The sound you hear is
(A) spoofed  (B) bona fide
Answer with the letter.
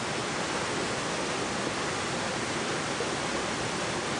B